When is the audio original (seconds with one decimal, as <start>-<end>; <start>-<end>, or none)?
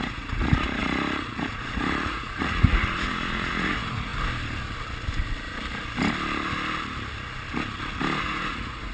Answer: 4.1-8.2